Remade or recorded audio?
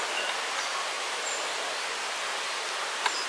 recorded